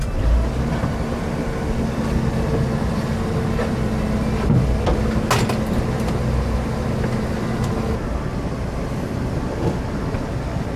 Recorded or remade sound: recorded